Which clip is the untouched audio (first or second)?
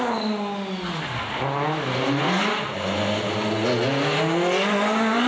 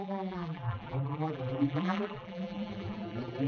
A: first